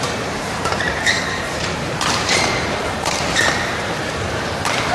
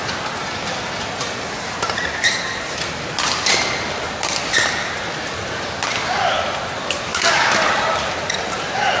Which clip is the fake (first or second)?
first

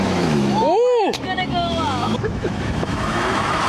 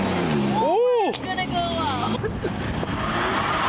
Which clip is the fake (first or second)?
first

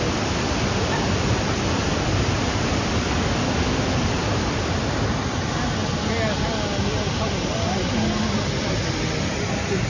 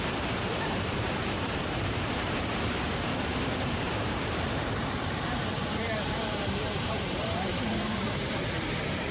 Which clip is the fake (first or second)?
second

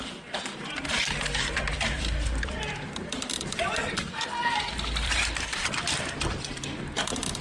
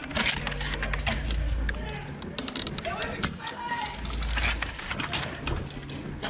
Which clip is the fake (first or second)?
first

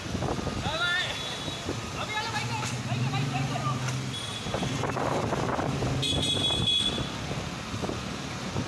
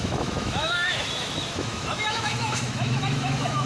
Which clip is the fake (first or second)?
second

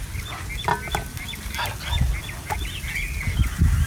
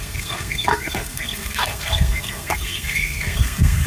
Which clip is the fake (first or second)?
second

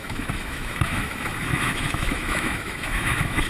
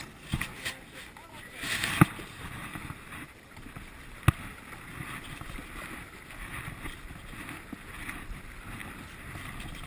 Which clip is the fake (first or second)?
first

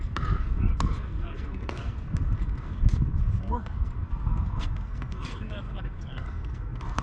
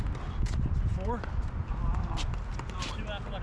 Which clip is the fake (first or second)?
first